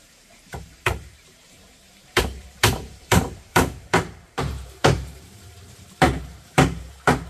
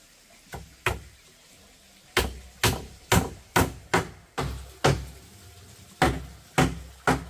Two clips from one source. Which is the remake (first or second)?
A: first